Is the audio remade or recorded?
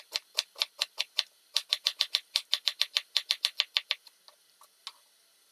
recorded